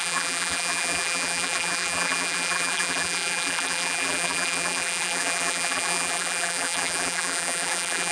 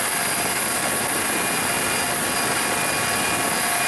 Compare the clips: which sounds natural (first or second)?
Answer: second